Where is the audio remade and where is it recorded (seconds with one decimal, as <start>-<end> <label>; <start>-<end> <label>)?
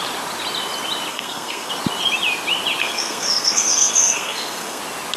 0.0-1.1 recorded; 1.1-1.7 remade; 1.7-2.8 recorded; 2.8-4.8 remade; 4.8-5.2 recorded